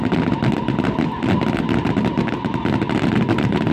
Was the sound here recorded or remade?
recorded